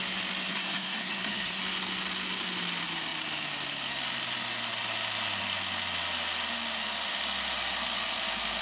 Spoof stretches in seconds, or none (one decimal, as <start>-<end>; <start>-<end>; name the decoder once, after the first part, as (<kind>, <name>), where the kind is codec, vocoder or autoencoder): 0.5-1.6 (codec, SNAC)